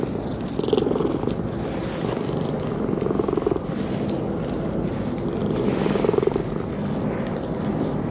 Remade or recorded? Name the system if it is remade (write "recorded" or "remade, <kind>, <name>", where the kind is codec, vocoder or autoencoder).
recorded